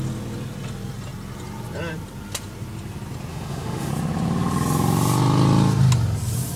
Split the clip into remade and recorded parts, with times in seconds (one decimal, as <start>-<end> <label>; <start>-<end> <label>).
0.0-3.3 recorded; 3.3-3.9 remade; 3.9-6.6 recorded